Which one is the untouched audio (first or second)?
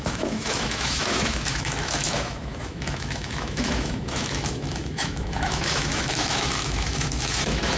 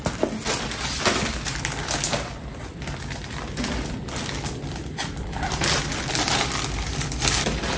second